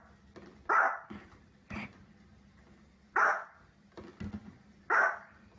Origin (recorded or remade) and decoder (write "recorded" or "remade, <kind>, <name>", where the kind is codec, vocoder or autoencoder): recorded